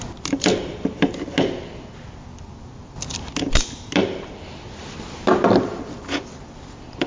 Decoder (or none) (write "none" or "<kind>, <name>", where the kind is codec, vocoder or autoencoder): none